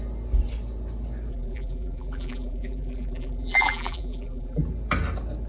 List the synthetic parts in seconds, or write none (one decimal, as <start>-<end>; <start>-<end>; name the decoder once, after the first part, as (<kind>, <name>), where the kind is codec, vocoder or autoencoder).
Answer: 1.3-4.6 (vocoder, BigVGAN v2)